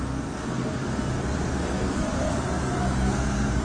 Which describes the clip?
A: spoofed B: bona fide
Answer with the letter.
A